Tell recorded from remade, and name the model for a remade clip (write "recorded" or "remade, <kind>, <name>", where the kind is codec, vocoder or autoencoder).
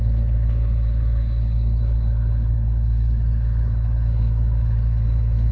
remade, codec, HILCodec